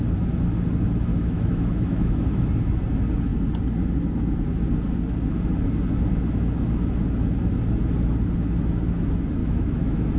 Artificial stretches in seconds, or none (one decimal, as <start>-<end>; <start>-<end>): 1.1-2.5; 9.4-10.2